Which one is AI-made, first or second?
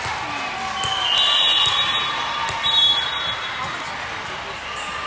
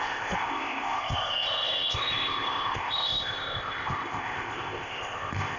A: second